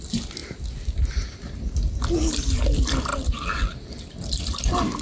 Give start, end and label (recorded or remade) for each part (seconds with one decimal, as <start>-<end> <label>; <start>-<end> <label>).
0.0-5.0 recorded